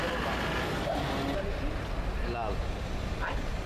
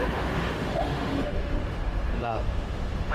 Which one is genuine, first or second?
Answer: first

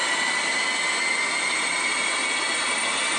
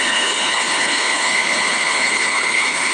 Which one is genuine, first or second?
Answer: first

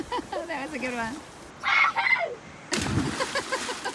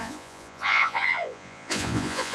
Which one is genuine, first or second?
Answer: first